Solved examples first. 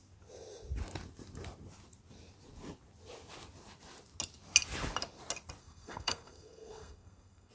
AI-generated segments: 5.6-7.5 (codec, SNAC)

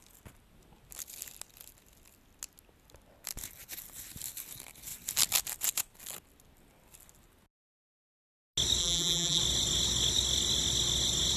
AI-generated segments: 8.8-9.4 (vocoder, BigVGAN v2)

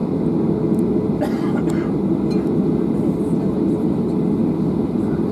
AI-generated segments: none

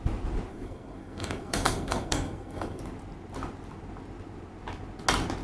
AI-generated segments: 0.5-2.8 (codec, SNAC)

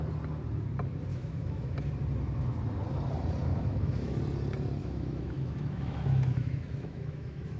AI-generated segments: 1.1-1.9 (autoencoder, DAC-VAE); 3.5-4.2; 4.8-7.6

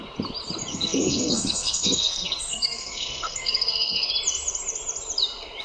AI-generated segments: 0.7-4.1 (codec, SNAC)

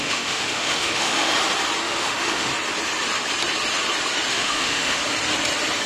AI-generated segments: 0.0-1.3 (autoencoder, DAC-VAE); 1.8-2.5; 4.3-5.0